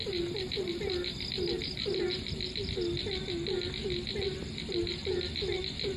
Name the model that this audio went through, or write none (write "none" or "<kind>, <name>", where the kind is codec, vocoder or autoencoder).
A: none